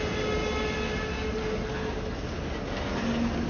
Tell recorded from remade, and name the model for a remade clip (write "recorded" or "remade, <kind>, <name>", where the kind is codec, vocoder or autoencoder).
recorded